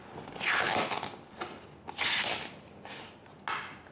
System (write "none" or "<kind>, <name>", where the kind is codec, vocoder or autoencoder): none